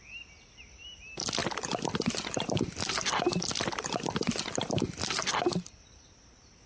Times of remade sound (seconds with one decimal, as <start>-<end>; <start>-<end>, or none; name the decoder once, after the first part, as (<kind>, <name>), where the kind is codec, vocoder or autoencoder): none